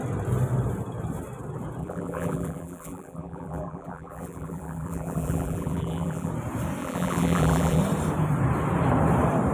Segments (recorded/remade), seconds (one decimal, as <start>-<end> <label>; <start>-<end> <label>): 0.0-1.8 recorded; 1.8-6.3 remade; 6.3-6.8 recorded; 6.8-7.8 remade; 7.8-9.5 recorded

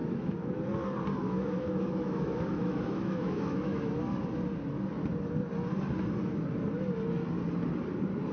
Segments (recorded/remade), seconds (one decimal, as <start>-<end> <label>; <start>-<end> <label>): 0.0-0.7 remade; 0.7-1.2 recorded; 1.2-3.9 remade; 3.9-8.3 recorded

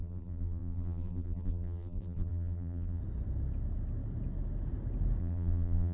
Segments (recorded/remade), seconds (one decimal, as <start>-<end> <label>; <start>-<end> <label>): 0.0-3.0 remade; 3.0-5.2 recorded; 5.2-5.9 remade

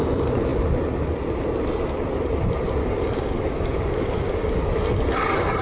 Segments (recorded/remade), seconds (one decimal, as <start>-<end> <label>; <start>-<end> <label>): 0.0-2.8 recorded; 2.8-4.7 remade; 4.7-5.6 recorded

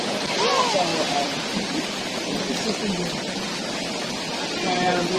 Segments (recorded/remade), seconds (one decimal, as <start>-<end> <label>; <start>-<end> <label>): 0.0-5.2 recorded

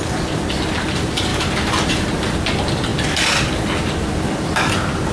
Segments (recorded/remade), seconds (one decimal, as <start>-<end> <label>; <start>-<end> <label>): 0.0-5.1 recorded

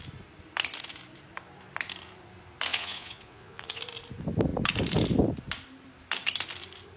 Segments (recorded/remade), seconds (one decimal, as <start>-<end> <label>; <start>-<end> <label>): 0.0-2.7 recorded; 2.7-3.8 remade; 3.8-7.0 recorded

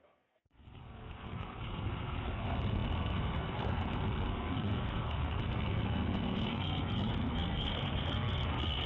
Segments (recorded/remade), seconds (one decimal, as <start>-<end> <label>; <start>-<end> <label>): 0.0-8.9 remade